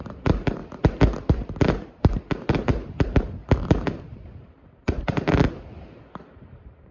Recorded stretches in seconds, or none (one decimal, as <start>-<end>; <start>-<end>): 0.6-1.3